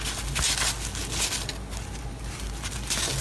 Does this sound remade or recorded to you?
recorded